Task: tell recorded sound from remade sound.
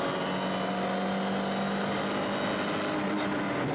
recorded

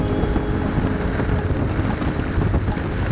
recorded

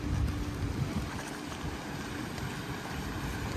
recorded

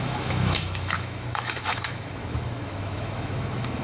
remade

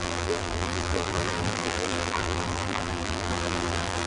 remade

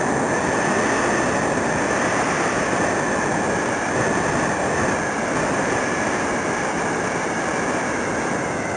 recorded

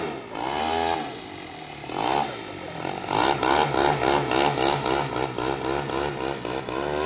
recorded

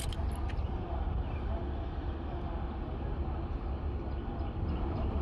recorded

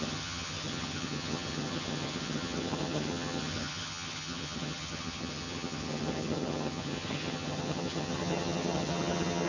remade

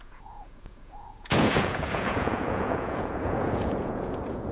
remade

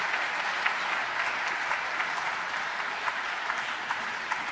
recorded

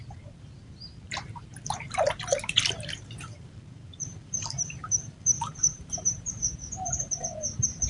remade